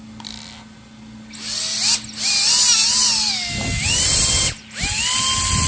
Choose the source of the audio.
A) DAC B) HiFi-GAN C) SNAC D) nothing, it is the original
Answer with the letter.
D